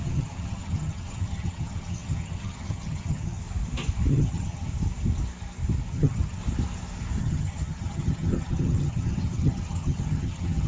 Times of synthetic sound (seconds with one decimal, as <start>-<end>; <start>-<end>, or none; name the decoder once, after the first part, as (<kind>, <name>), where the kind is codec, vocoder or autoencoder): 0.0-3.4 (vocoder, HiFi-GAN); 4.1-4.7; 5.9-6.4; 7.2-10.7